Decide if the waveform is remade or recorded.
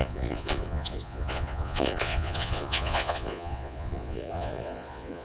remade